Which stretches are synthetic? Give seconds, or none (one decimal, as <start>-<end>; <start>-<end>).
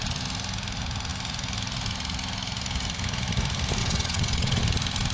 3.8-4.6